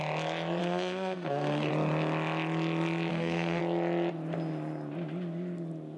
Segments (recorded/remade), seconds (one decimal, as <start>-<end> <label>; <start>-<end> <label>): 0.0-0.6 recorded; 0.6-1.7 remade; 1.7-3.1 recorded; 3.1-3.6 remade; 3.6-6.0 recorded